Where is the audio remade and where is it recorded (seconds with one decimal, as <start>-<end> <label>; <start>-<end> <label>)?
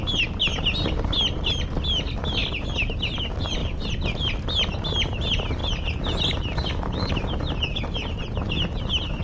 0.0-2.4 recorded; 2.4-3.2 remade; 3.2-3.6 recorded; 3.6-4.2 remade; 4.2-9.2 recorded